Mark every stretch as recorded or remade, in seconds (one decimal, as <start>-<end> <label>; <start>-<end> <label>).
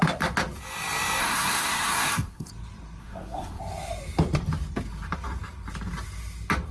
0.0-1.2 recorded; 1.2-2.5 remade; 2.5-3.0 recorded; 3.0-3.6 remade; 3.6-6.7 recorded